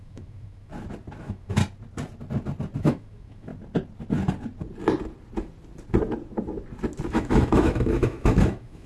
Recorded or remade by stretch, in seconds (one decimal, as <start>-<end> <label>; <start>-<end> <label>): 0.0-0.7 remade; 0.7-1.2 recorded; 1.2-1.6 remade; 1.6-2.8 recorded; 2.8-3.5 remade; 3.5-7.1 recorded; 7.1-8.9 remade